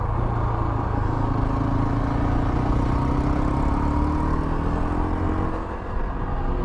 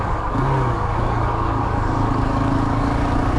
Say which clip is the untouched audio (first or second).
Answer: first